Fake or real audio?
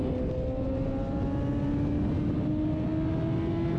real